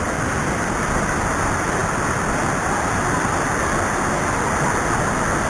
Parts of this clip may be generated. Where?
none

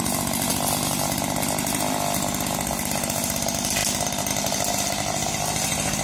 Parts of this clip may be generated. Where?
none

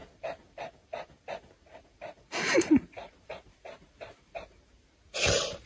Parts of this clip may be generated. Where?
2.5-5.7 (vocoder, BigVGAN v2)

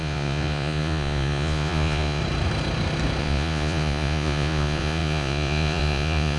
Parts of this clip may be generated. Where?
0.0-2.2 (vocoder, Vocos); 3.2-6.4

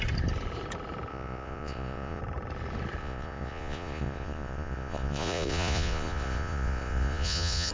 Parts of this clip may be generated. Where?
1.1-2.2 (vocoder, Vocos); 3.0-7.7